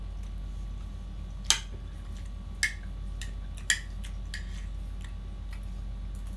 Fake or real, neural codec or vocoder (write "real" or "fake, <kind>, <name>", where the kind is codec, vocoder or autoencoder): real